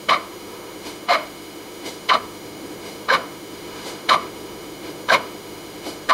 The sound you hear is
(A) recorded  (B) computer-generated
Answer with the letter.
B